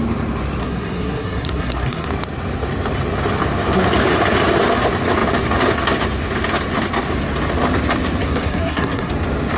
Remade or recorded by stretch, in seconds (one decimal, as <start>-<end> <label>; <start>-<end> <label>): 0.0-0.6 recorded; 0.6-2.1 remade; 2.1-8.2 recorded; 8.2-9.1 remade; 9.1-9.6 recorded